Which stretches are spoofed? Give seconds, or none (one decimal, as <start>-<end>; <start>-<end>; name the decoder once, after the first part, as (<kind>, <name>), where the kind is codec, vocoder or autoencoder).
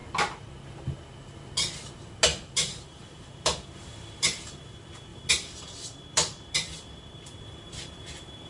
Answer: 2.3-4.6 (vocoder, BigVGAN v2); 5.1-8.5